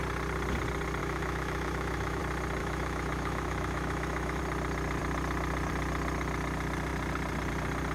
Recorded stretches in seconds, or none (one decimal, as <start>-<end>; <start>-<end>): 0.0-1.0; 2.2-2.6; 4.4-7.9